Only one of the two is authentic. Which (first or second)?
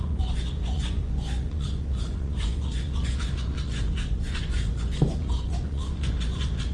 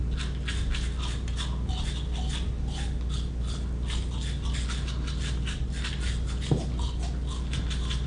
second